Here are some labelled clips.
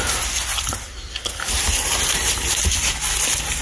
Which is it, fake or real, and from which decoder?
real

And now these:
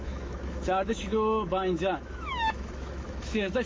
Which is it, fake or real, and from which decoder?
fake, autoencoder, DAC-VAE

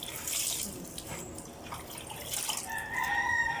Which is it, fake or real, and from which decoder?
real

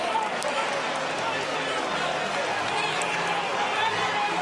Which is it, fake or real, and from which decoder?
real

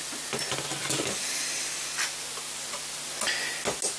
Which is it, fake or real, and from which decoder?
real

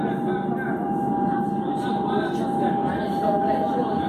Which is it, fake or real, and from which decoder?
real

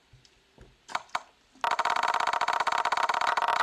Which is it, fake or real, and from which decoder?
real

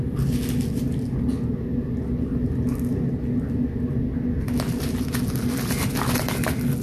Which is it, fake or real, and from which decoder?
real